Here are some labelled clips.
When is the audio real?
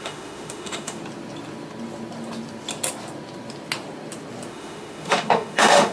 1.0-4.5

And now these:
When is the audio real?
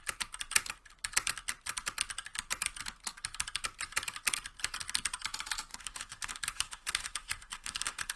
0.0-5.7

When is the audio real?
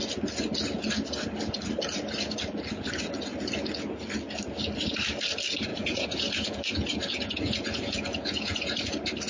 0.0-5.7; 8.8-9.3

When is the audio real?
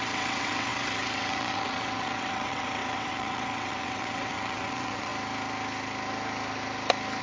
5.1-7.2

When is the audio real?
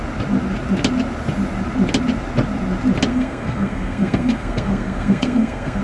0.0-3.1